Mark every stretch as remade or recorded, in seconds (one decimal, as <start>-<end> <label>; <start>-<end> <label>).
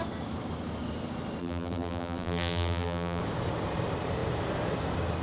0.0-1.4 recorded; 1.4-3.2 remade; 3.2-5.2 recorded